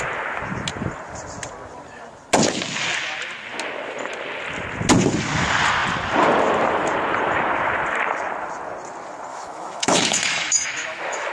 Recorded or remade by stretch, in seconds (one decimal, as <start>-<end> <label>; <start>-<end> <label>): 0.0-9.3 recorded; 9.3-11.3 remade

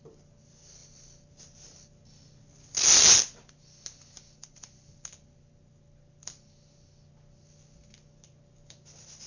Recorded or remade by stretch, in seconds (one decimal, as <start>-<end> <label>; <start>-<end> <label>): 0.0-9.3 recorded